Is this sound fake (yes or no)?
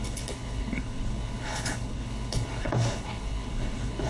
yes